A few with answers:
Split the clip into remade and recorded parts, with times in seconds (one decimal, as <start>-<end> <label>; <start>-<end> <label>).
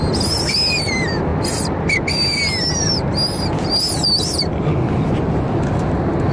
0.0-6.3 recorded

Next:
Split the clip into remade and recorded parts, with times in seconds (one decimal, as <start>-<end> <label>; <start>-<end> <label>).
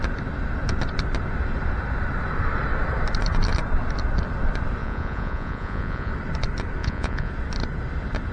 0.0-4.8 recorded; 4.8-6.1 remade; 6.1-6.8 recorded; 6.8-7.3 remade; 7.3-8.3 recorded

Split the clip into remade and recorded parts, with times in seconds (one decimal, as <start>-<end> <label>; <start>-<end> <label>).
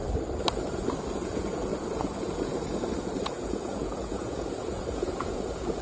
0.0-1.1 recorded; 1.1-5.8 remade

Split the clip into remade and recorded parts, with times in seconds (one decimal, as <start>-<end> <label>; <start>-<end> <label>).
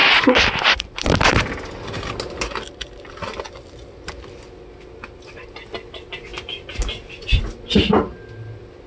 0.0-8.9 recorded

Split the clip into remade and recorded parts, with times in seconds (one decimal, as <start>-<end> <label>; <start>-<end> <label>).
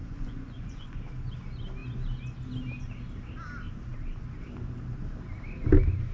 0.0-1.0 remade; 1.0-6.1 recorded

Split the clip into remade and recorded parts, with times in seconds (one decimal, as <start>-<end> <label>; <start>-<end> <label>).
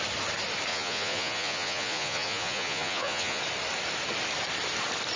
0.0-0.7 recorded; 0.7-3.4 remade; 3.4-5.2 recorded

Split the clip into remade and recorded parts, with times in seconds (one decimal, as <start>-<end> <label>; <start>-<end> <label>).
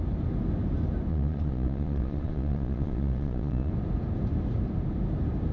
0.0-1.1 recorded; 1.1-3.7 remade; 3.7-5.5 recorded